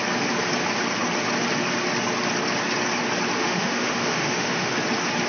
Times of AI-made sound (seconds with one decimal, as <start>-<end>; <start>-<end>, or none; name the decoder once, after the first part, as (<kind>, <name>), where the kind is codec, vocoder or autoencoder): 3.4-4.7 (autoencoder, DAC-VAE)